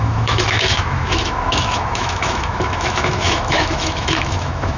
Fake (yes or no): yes